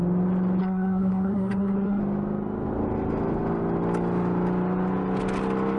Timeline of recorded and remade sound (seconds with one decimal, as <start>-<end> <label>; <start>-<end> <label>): 0.0-0.6 recorded; 0.6-2.0 remade; 2.0-5.8 recorded